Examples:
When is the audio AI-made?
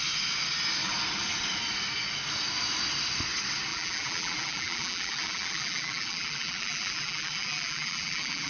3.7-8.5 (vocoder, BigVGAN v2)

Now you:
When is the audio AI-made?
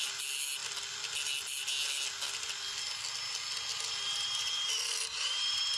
3.7-5.8 (vocoder, BigVGAN v2)